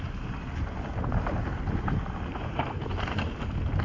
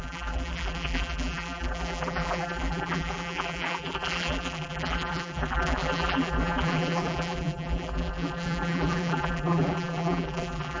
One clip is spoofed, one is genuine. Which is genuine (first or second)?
first